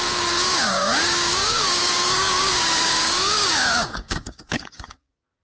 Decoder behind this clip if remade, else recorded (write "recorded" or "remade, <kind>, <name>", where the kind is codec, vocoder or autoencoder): remade, codec, DAC